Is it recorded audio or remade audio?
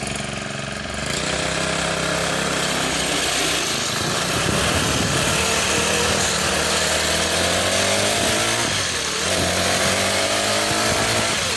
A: recorded